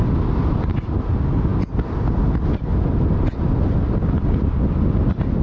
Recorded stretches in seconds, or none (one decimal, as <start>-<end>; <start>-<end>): 0.0-5.4